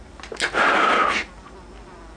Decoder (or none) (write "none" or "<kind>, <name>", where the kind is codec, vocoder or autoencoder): none